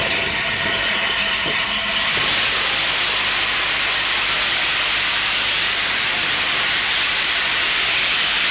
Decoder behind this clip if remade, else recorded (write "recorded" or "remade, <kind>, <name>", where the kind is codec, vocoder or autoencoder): remade, vocoder, BigVGAN v2